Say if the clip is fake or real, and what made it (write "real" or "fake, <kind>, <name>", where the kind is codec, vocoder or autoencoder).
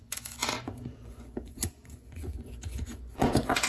fake, vocoder, Vocos